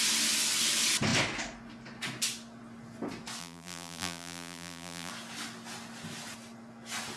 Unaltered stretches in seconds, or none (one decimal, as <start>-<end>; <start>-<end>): 0.0-3.4; 5.1-7.2